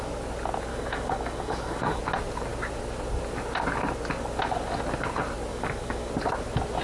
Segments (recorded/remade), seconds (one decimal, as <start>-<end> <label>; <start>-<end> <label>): 0.0-0.7 recorded; 0.7-2.0 remade; 2.0-5.5 recorded; 5.5-6.1 remade; 6.1-6.8 recorded